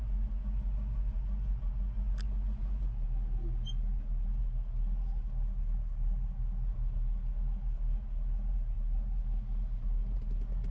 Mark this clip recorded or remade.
recorded